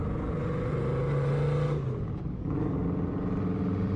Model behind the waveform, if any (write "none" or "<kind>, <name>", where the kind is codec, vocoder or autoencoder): none